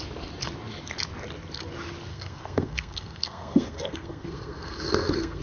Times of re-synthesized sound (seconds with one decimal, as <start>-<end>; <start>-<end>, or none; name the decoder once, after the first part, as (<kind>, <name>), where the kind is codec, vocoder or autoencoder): 2.1-5.4 (codec, SNAC)

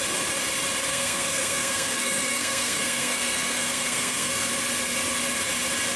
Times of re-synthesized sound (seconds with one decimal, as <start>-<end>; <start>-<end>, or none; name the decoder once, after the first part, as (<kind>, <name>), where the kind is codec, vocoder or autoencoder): 0.9-4.5 (codec, SNAC)

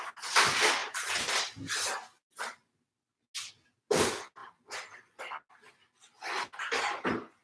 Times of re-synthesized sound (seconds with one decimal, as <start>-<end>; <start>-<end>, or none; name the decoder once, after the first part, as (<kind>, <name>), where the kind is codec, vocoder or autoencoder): none

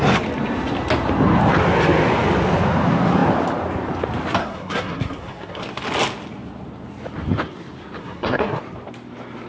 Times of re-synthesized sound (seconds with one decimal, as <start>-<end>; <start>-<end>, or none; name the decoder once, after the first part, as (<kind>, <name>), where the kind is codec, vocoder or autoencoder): 4.4-5.6 (codec, SNAC); 8.0-8.6

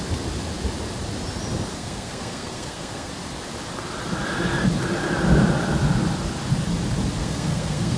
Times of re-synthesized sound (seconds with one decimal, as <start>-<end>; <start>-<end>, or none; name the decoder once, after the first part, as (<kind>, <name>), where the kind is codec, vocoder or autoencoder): 1.7-3.1 (codec, SNAC); 7.2-8.0

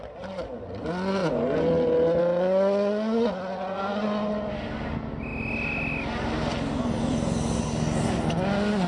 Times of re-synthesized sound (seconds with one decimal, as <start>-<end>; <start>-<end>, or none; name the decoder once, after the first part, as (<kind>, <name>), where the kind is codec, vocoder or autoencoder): none

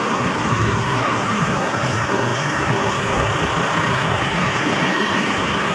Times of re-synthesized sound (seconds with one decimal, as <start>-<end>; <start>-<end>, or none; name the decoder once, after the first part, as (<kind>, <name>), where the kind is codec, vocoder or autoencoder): 0.0-3.3 (codec, SNAC); 3.9-5.7